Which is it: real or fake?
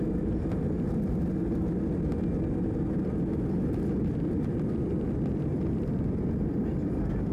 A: real